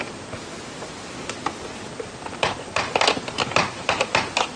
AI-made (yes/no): no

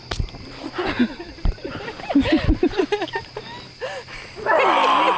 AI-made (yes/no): no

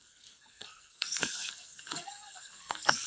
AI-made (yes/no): yes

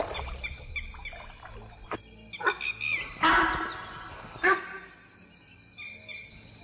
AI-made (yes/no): no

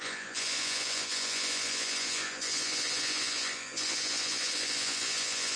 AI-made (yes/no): yes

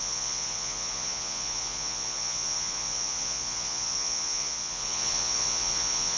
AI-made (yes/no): yes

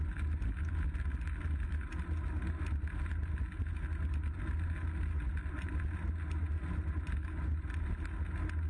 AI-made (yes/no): no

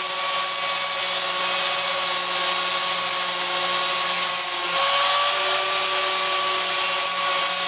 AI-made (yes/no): no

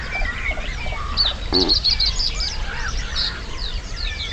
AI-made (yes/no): yes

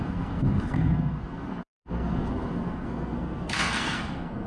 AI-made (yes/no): yes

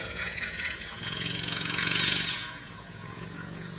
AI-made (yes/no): yes